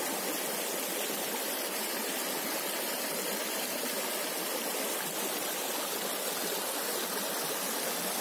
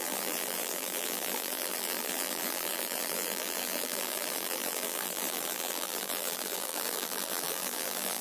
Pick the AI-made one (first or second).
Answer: second